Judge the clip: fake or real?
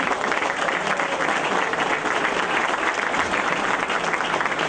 real